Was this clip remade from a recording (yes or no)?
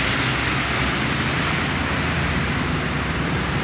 no